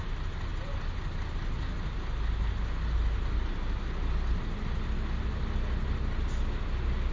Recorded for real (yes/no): yes